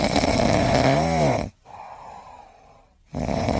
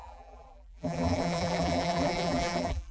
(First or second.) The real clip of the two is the first